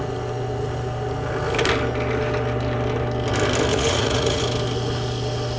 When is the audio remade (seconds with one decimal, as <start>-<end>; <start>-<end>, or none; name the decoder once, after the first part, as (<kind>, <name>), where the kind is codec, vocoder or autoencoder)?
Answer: 3.7-4.4 (vocoder, Vocos)